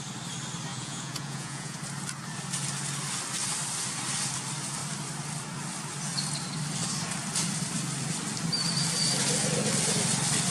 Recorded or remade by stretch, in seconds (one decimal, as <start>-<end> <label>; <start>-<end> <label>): 0.0-0.7 recorded; 0.7-1.8 remade; 1.8-10.5 recorded